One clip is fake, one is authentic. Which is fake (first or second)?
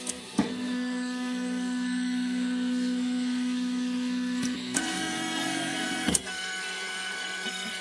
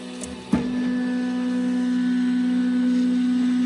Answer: first